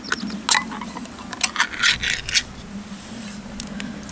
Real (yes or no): yes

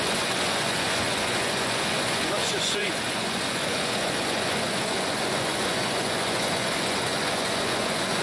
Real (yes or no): no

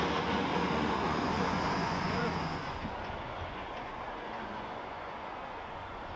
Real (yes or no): no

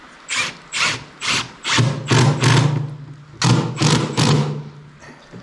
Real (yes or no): yes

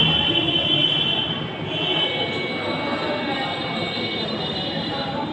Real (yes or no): yes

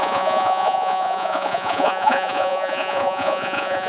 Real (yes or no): no